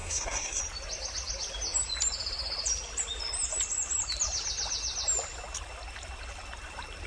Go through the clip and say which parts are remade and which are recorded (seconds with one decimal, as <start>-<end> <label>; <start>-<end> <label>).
0.0-0.6 remade; 0.6-7.1 recorded